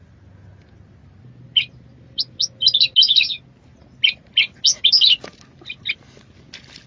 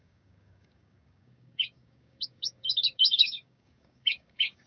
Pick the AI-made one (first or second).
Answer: second